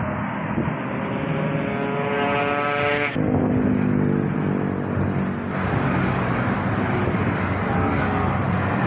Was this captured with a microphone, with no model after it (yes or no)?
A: yes